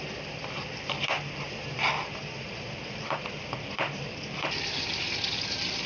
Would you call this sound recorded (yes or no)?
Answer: no